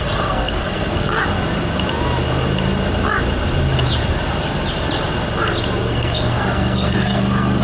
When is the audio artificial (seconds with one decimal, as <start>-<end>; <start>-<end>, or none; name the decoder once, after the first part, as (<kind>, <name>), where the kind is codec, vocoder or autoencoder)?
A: 0.0-1.2 (codec, SNAC); 5.8-7.6